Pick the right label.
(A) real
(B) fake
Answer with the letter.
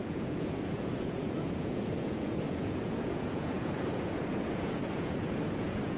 B